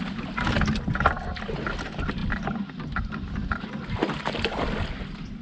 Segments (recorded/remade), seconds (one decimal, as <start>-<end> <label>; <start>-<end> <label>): 0.0-5.4 recorded